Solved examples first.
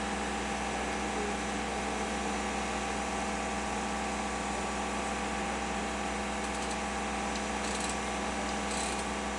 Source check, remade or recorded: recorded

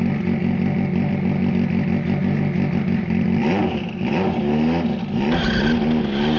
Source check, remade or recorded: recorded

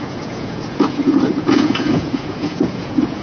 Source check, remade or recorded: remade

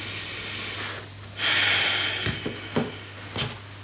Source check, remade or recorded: recorded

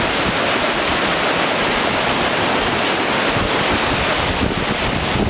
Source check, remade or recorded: recorded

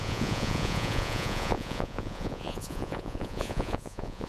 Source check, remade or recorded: remade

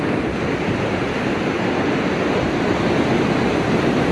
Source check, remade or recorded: recorded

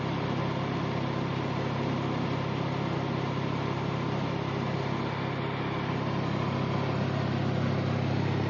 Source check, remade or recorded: recorded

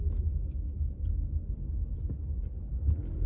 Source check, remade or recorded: recorded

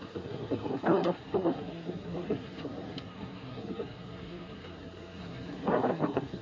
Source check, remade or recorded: remade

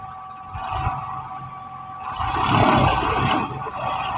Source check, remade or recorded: recorded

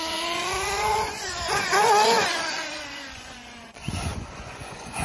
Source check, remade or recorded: remade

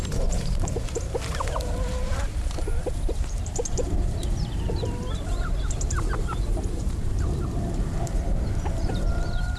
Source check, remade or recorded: remade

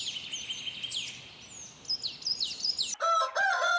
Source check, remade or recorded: recorded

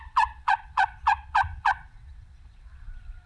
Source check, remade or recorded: remade